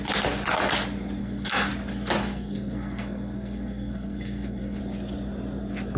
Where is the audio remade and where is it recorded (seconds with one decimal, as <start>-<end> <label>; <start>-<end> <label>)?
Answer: 0.0-1.2 recorded; 1.2-1.7 remade; 1.7-2.2 recorded; 2.2-4.8 remade; 4.8-6.0 recorded